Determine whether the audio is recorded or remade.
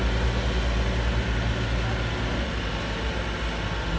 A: recorded